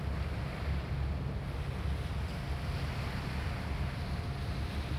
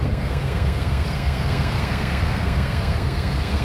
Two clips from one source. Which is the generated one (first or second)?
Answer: second